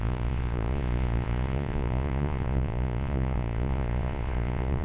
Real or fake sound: fake